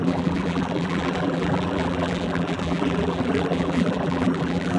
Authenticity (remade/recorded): remade